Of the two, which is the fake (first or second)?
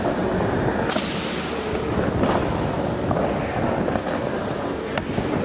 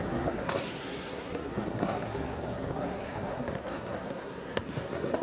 second